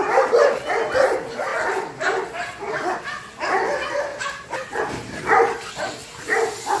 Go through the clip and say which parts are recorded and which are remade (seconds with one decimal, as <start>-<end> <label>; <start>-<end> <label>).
0.0-4.1 recorded; 4.1-5.2 remade; 5.2-6.8 recorded